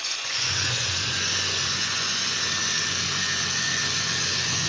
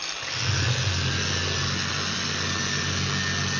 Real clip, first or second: second